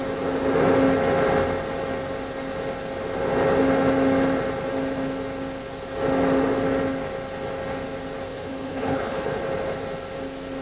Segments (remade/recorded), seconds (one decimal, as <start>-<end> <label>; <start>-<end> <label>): 0.0-8.3 recorded; 8.3-9.4 remade; 9.4-10.6 recorded